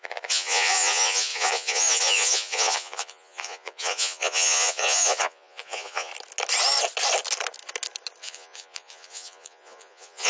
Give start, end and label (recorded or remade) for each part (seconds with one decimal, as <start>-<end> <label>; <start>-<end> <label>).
0.0-6.1 remade; 6.1-8.2 recorded; 8.2-10.3 remade